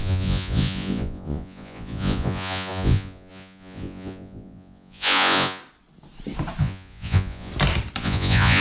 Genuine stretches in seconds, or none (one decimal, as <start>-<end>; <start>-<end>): 5.6-6.6; 7.5-8.0